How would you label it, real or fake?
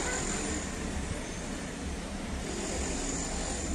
real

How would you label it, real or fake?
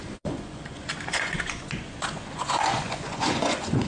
fake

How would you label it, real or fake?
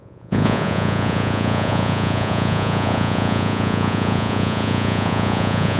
fake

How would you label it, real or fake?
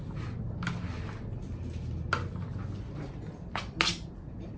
real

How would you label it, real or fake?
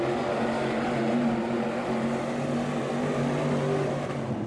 real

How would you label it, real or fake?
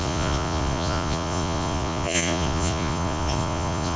fake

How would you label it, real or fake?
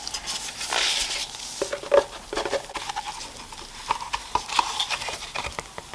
real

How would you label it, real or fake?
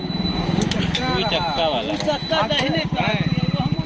real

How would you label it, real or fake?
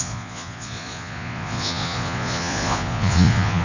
fake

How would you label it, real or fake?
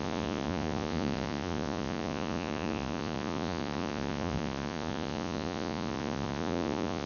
fake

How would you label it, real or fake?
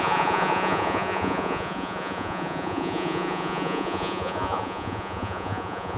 fake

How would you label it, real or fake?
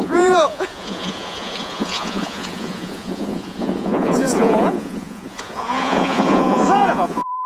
fake